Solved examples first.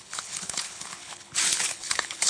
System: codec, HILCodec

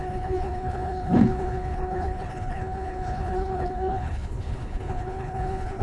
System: codec, HILCodec